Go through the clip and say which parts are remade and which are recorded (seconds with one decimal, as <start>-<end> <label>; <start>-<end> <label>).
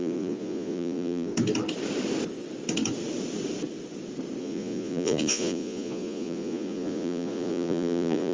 0.0-1.3 remade; 1.3-4.4 recorded; 4.4-8.3 remade